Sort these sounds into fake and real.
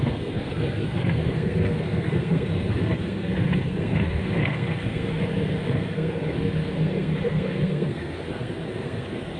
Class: fake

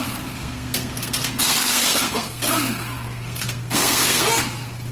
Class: fake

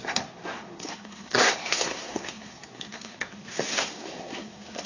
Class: fake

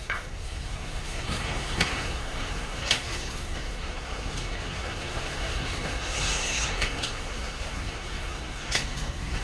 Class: fake